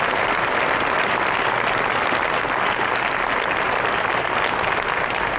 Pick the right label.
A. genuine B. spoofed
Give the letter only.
A